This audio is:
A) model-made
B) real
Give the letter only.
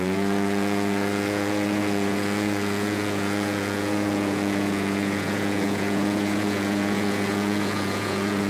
A